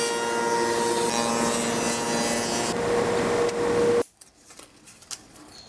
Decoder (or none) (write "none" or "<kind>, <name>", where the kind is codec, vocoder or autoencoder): none